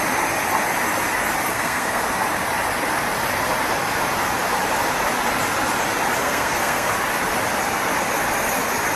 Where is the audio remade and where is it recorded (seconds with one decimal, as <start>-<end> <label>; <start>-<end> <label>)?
0.0-1.5 recorded; 1.5-2.0 remade; 2.0-6.2 recorded; 6.2-6.9 remade; 6.9-9.0 recorded